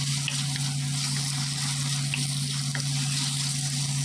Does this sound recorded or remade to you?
recorded